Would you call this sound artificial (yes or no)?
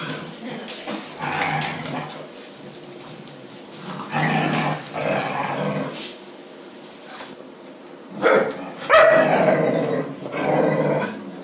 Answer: no